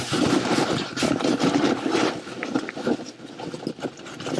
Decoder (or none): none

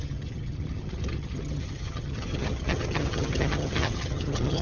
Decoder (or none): vocoder, HiFi-GAN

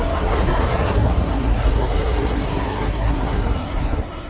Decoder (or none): codec, SNAC